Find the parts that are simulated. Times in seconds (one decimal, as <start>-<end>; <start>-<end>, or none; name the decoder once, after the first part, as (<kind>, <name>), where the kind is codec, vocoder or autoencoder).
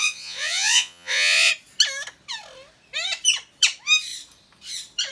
0.0-1.5 (vocoder, Vocos)